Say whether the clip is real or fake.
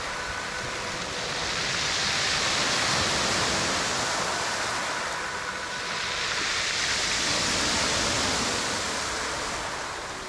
real